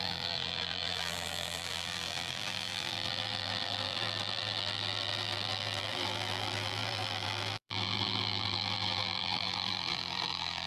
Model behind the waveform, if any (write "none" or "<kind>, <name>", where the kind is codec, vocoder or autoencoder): vocoder, BigVGAN v2